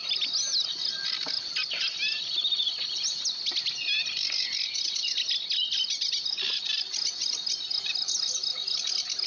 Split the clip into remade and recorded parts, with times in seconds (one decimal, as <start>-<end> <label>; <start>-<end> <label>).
0.0-9.3 recorded